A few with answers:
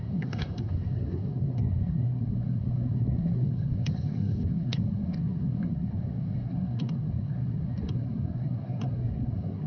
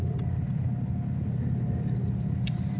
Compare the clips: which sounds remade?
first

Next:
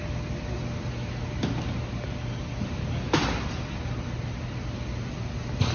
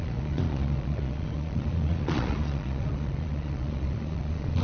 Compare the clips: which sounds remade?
second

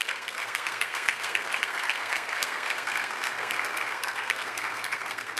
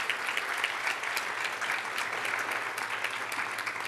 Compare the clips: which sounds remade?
first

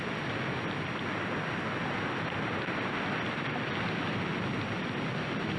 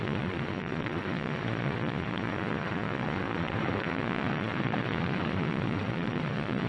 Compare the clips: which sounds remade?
second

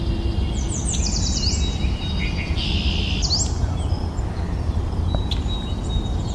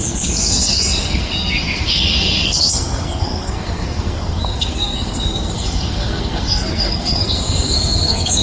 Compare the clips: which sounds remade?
second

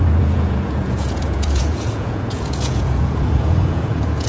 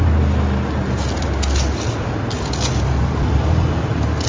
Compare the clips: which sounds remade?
first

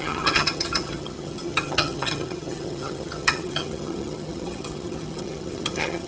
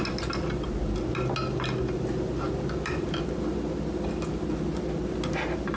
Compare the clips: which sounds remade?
first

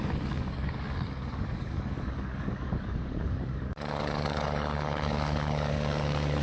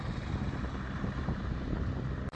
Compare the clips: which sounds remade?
first